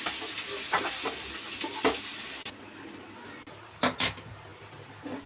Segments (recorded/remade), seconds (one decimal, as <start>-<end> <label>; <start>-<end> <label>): 0.0-4.5 recorded; 4.5-5.3 remade